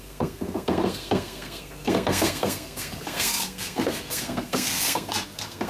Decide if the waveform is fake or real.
fake